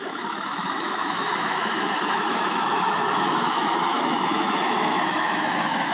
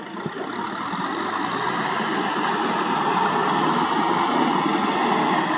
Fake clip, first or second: first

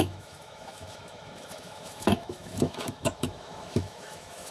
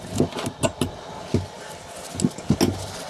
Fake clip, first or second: first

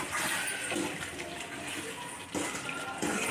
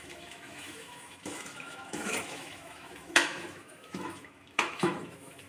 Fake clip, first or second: second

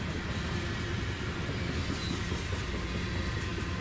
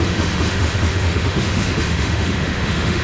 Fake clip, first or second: second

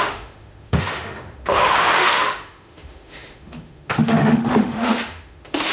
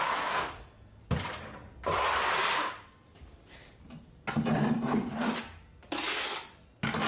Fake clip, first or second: first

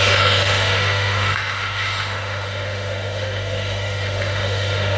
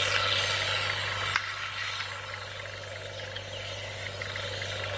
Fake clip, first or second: first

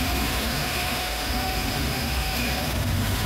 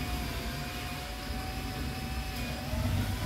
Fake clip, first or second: first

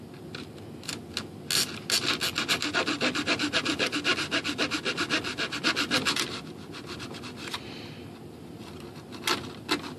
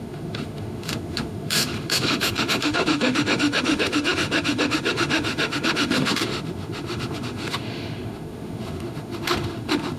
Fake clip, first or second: second